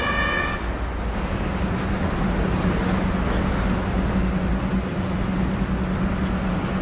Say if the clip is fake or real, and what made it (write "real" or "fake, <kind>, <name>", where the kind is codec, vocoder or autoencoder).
real